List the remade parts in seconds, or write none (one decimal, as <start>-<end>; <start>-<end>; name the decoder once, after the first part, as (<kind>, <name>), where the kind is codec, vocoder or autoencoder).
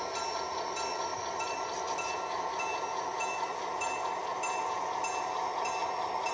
1.1-1.8 (vocoder, BigVGAN v2)